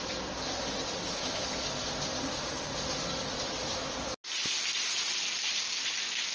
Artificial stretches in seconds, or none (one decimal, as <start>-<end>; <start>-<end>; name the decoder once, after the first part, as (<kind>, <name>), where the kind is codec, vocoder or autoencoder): none